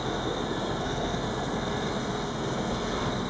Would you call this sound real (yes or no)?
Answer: no